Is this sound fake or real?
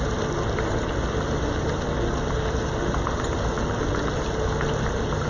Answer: real